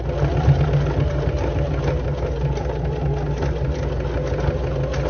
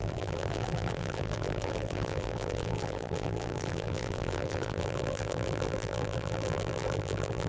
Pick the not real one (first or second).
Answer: second